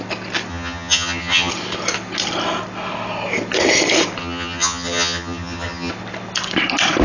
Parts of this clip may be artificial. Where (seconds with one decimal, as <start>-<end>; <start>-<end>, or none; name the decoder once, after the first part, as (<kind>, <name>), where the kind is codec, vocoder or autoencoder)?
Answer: 0.5-1.5 (vocoder, HiFi-GAN); 4.2-5.9

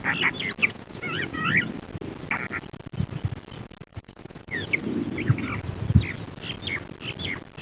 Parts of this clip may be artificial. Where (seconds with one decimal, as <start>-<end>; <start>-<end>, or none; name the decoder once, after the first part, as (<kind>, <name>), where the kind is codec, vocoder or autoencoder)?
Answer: 0.6-1.4 (vocoder, Vocos); 3.9-4.7

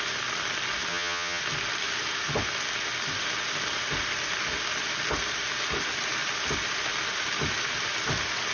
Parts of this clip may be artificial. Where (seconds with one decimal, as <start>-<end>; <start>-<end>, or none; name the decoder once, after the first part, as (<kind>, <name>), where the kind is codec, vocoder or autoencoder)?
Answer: 0.9-1.4 (vocoder, HiFi-GAN)

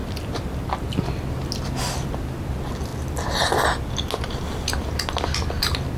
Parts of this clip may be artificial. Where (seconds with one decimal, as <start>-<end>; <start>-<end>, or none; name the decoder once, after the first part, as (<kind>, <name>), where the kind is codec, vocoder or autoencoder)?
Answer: none

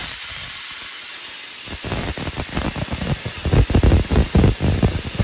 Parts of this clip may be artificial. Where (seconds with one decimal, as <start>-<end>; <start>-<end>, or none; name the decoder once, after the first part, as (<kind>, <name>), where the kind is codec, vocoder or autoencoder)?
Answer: 0.0-2.9 (vocoder, BigVGAN v2)

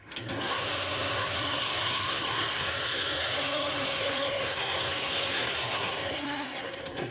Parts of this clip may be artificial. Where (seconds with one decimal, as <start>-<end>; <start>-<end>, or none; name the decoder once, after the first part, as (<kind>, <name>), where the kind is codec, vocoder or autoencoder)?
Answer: 0.0-7.1 (codec, SNAC)

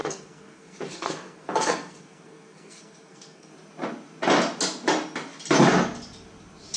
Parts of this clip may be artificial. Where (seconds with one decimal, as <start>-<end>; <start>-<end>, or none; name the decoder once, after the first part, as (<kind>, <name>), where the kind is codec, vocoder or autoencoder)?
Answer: 0.0-3.5 (codec, SNAC)